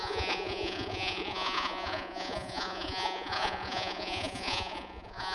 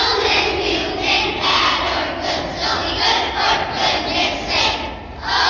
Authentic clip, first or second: second